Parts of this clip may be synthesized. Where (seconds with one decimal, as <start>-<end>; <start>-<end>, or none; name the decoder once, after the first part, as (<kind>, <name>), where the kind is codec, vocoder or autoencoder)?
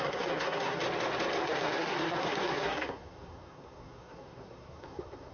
0.0-0.8 (codec, SNAC); 1.4-5.3